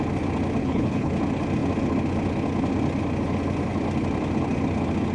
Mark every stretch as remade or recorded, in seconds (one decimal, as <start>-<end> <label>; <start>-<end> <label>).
0.0-0.6 recorded; 0.6-1.1 remade; 1.1-5.1 recorded